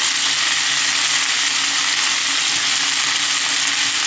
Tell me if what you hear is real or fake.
real